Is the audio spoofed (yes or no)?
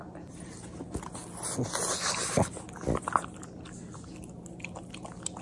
no